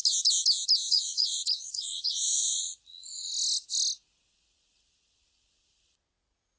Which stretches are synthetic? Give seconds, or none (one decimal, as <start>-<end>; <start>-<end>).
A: 0.9-3.3; 4.3-6.6